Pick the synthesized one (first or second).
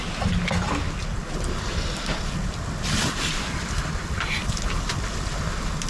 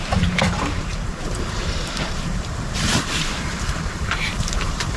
second